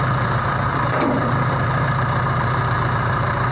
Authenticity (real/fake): fake